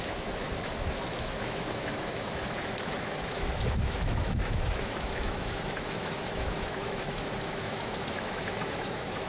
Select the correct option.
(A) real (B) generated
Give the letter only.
B